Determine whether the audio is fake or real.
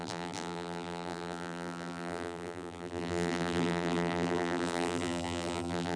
fake